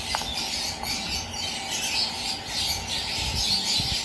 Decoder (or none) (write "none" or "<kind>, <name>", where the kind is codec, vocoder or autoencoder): none